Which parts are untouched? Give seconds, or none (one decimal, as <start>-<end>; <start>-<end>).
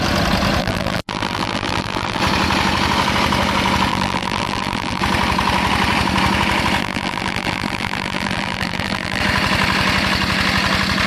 0.0-0.6; 2.2-3.9; 5.0-6.8; 9.2-11.1